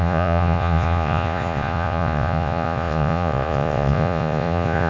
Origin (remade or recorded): remade